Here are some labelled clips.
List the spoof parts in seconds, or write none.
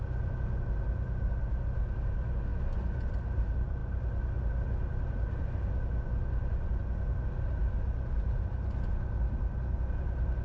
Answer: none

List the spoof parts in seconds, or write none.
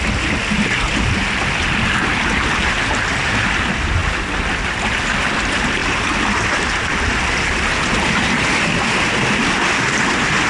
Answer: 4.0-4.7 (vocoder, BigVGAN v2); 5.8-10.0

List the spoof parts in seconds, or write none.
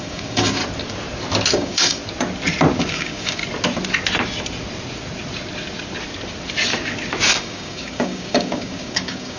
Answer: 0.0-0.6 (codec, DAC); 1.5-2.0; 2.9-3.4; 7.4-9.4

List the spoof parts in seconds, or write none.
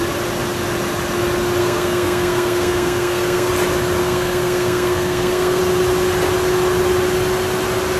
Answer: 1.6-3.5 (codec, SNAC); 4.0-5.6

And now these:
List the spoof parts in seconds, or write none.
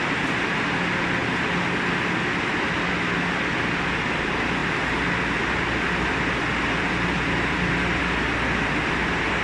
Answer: none